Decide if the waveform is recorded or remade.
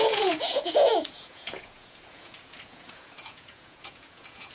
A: remade